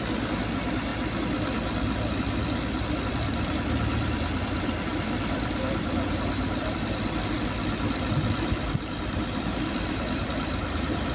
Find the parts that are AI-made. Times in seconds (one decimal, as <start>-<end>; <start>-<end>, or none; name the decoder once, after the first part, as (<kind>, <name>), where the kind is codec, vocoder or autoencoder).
0.0-0.9 (vocoder, BigVGAN v2); 3.0-11.1